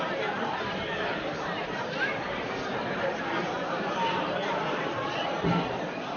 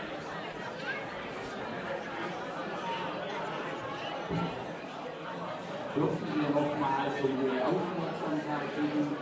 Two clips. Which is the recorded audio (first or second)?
second